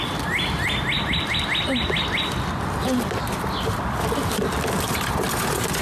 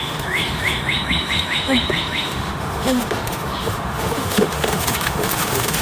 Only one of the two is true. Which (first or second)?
first